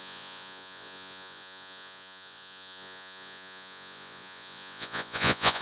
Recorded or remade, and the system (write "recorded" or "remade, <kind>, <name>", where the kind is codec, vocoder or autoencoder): remade, vocoder, Vocos